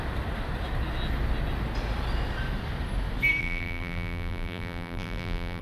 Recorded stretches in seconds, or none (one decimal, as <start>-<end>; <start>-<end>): 0.0-3.4